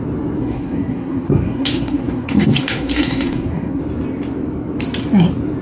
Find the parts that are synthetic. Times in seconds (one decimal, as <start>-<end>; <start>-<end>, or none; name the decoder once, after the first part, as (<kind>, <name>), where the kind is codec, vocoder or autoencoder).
0.4-3.8 (codec, SNAC)